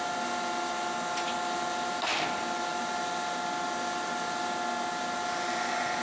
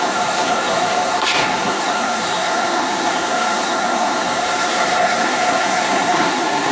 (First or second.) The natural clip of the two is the first